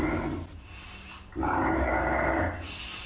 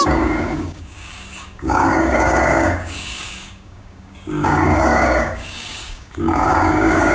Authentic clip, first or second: first